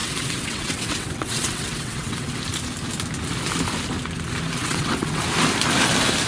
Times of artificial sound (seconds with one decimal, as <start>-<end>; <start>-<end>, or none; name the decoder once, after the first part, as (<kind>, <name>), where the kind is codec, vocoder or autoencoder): 0.0-2.4 (vocoder, WaveNeXt); 4.6-5.2